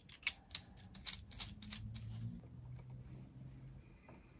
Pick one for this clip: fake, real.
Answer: real